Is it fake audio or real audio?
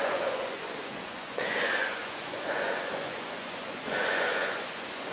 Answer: fake